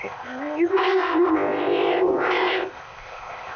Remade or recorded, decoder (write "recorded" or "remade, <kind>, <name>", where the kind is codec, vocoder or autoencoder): remade, codec, ZipCodec